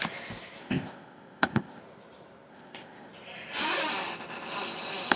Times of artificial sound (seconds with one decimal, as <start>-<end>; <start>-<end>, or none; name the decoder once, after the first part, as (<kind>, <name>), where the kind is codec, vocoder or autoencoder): 0.6-1.8 (codec, ZipCodec); 2.5-3.1